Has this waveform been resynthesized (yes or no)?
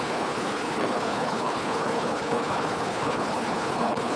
yes